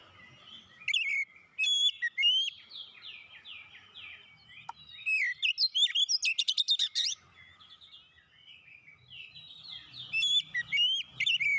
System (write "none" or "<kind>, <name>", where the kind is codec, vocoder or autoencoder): none